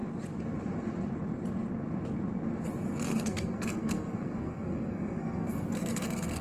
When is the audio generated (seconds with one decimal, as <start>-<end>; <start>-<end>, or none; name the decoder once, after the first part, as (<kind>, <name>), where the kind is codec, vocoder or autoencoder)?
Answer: 3.1-6.4 (codec, SNAC)